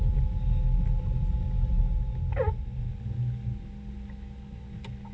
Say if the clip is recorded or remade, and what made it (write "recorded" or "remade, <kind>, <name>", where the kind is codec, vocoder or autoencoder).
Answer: recorded